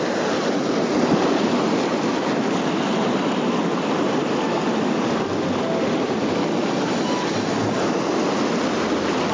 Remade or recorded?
recorded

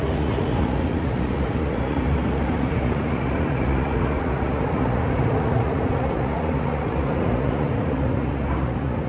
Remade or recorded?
remade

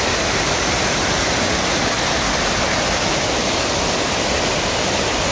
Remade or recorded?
recorded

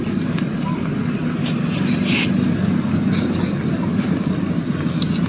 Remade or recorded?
recorded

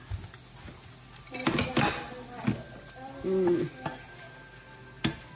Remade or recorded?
recorded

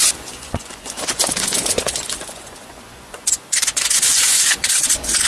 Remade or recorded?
remade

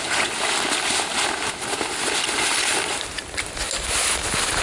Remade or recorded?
recorded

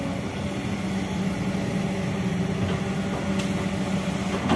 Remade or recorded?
recorded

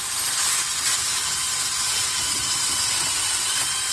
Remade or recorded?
recorded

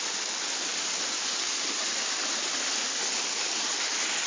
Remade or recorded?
recorded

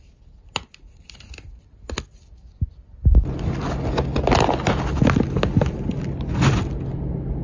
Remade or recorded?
recorded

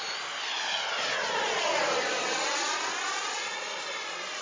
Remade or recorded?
recorded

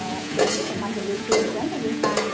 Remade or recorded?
remade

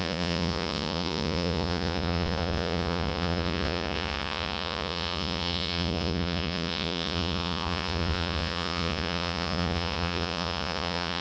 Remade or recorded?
remade